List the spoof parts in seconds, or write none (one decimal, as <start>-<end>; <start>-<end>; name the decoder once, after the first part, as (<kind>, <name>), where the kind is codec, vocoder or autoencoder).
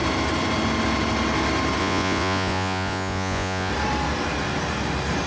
1.8-3.7 (vocoder, Vocos)